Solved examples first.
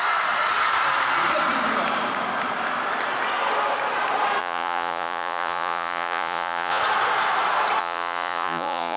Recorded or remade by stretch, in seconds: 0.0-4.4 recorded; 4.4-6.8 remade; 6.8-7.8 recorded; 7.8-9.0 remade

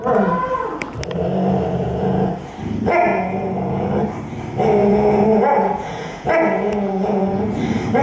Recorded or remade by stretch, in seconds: 0.0-1.8 recorded; 1.8-2.3 remade; 2.3-3.1 recorded; 3.1-3.9 remade; 3.9-4.8 recorded; 4.8-7.4 remade; 7.4-8.0 recorded

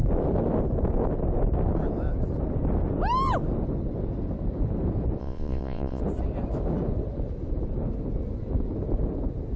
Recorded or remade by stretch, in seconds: 0.0-5.2 recorded; 5.2-6.0 remade; 6.0-9.6 recorded

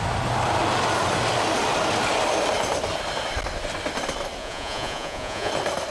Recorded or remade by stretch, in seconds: 0.0-4.4 recorded; 4.4-5.5 remade; 5.5-5.9 recorded

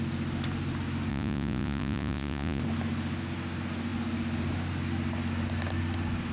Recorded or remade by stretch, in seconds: 0.0-1.1 recorded; 1.1-2.6 remade; 2.6-6.3 recorded